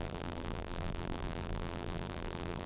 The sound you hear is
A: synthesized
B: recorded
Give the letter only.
A